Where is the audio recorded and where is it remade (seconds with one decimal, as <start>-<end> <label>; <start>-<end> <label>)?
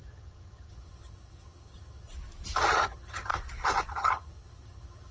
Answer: 0.0-2.1 remade; 2.1-2.7 recorded; 2.7-3.3 remade; 3.3-3.9 recorded; 3.9-5.1 remade